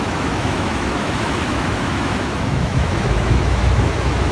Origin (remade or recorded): remade